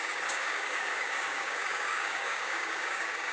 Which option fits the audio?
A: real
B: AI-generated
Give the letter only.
B